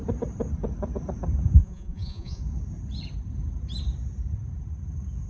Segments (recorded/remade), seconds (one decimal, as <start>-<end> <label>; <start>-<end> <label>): 0.0-1.6 recorded; 1.6-2.4 remade; 2.4-5.3 recorded